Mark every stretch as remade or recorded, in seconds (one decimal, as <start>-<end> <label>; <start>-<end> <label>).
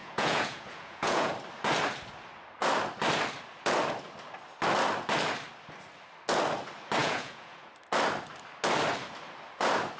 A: 0.0-1.3 remade; 1.3-7.0 recorded; 7.0-7.7 remade; 7.7-10.0 recorded